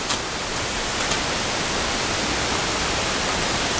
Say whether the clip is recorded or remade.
recorded